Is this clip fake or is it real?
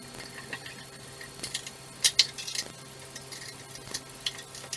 real